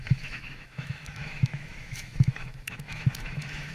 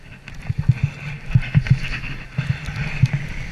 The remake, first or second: first